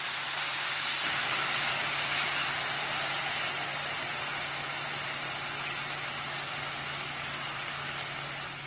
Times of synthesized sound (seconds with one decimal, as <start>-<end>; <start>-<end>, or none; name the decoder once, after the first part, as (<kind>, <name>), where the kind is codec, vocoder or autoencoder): 1.2-1.8 (codec, DAC)